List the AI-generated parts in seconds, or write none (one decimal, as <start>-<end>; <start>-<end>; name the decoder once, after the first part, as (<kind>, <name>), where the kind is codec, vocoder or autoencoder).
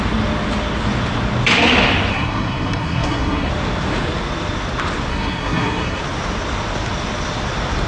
2.1-3.5 (codec, SNAC); 5.1-6.0